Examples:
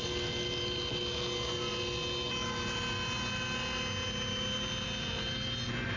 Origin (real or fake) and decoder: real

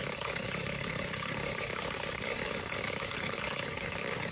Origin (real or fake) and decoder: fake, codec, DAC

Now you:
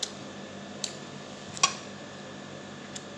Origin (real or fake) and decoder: real